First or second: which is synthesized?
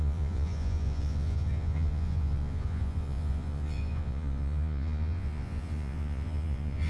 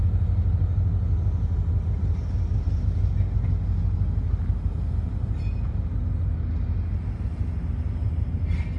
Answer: first